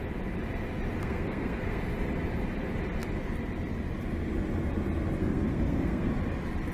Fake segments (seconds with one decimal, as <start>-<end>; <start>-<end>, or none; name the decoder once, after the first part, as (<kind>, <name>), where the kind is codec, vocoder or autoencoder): 1.0-1.8 (codec, SNAC); 5.2-6.1